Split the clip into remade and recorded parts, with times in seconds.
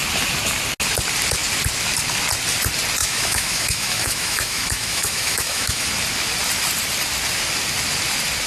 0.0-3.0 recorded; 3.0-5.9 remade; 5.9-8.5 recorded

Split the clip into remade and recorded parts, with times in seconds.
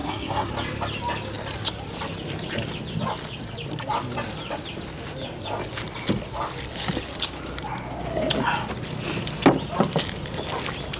0.0-0.5 remade; 0.5-11.0 recorded